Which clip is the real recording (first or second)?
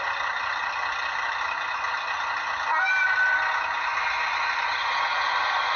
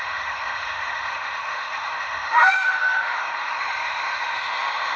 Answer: first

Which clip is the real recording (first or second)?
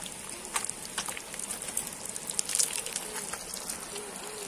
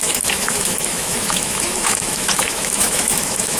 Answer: first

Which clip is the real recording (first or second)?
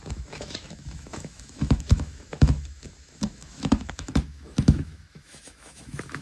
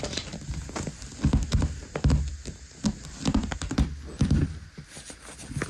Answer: second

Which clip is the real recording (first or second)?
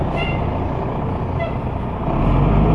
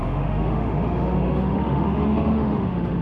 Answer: first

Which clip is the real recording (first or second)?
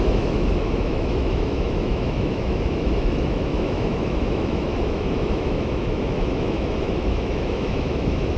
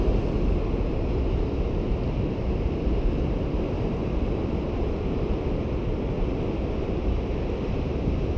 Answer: second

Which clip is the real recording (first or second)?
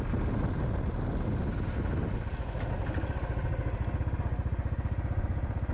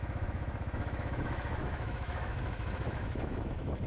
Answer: first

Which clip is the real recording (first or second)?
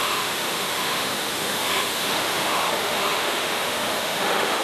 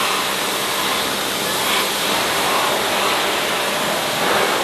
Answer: second